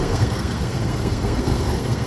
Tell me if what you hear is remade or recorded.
remade